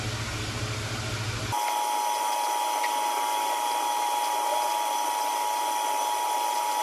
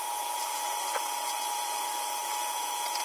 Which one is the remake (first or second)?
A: second